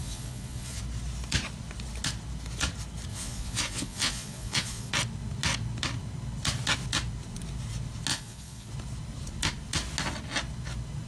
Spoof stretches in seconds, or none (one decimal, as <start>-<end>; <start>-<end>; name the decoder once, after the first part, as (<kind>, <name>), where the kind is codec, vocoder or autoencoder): 0.0-0.8 (vocoder, Vocos); 3.1-4.9; 8.1-8.7